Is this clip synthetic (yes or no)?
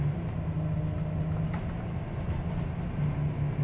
no